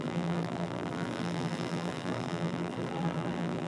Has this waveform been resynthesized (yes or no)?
yes